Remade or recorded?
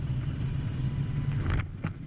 recorded